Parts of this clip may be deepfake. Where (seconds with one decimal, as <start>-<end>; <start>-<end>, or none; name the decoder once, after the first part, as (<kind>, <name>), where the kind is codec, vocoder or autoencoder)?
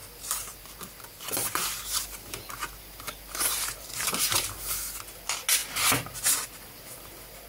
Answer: 0.0-4.5 (vocoder, BigVGAN v2)